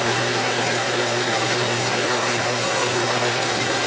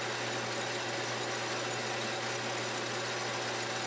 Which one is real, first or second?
second